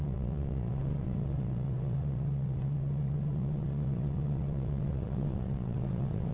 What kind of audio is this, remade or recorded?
remade